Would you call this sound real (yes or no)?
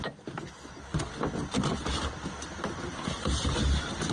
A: yes